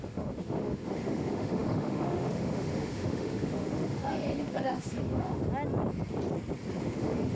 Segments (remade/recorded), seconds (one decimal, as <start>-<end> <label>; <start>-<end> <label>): 0.0-5.4 remade; 5.4-6.8 recorded; 6.8-7.3 remade